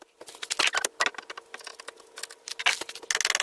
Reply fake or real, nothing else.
real